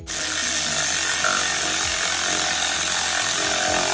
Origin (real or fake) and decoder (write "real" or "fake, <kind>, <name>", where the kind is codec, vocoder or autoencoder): real